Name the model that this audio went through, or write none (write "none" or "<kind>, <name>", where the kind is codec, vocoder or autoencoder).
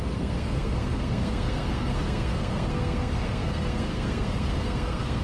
codec, SNAC